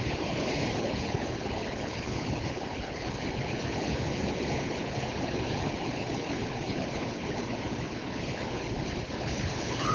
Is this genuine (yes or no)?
no